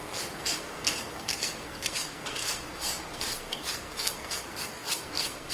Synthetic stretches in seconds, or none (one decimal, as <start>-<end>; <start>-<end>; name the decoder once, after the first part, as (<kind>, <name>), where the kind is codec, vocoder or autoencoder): 0.0-5.5 (codec, SNAC)